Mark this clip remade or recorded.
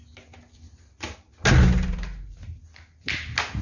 recorded